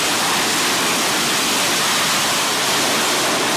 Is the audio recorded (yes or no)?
yes